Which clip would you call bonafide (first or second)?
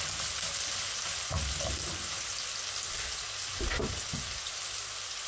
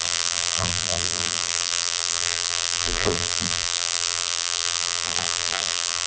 first